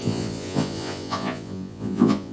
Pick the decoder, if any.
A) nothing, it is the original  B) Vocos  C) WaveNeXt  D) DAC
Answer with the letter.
B